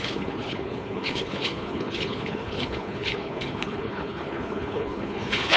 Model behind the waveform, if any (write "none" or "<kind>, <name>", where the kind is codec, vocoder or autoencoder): codec, HILCodec